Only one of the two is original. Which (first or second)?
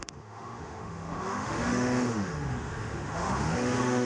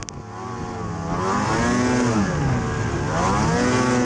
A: second